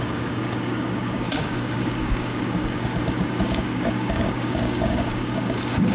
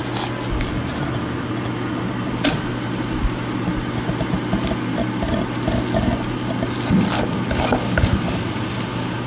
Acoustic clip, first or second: second